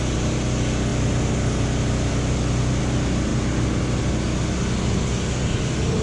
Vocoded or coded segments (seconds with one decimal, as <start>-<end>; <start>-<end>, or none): none

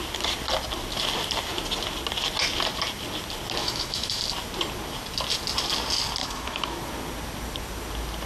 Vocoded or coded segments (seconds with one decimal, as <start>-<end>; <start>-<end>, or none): 3.6-4.2; 6.2-6.8

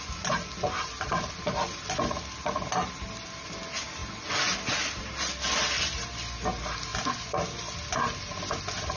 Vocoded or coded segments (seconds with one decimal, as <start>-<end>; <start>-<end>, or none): none

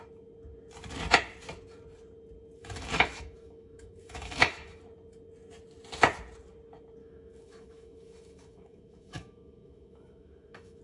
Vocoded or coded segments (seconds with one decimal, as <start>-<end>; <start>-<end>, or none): 2.6-4.8; 7.0-10.8

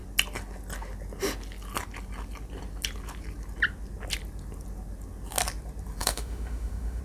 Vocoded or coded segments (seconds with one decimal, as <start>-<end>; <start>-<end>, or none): 6.0-7.0

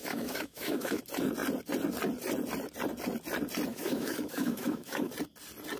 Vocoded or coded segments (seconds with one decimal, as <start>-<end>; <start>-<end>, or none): 0.0-1.0; 3.7-5.1

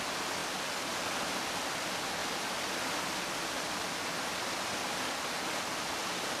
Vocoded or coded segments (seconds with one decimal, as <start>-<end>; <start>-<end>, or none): none

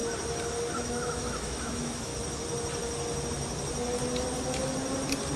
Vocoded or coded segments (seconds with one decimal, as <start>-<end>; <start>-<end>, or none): 0.8-2.1